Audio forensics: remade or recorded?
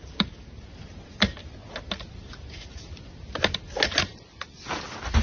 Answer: recorded